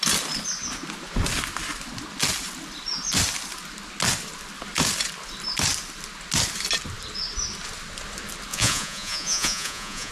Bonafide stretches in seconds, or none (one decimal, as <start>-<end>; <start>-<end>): 0.0-8.5